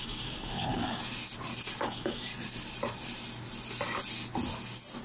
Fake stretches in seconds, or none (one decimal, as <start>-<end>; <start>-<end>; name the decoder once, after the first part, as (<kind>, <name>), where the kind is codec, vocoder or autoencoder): 0.0-1.0 (codec, DAC); 1.8-2.3